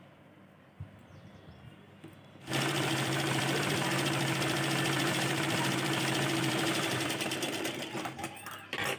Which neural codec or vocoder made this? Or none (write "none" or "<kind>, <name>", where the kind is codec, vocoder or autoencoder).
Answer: vocoder, BigVGAN v2